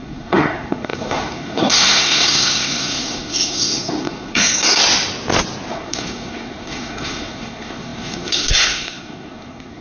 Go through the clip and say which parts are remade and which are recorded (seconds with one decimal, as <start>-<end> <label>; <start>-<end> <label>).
0.0-4.8 remade; 4.8-5.7 recorded; 5.7-9.8 remade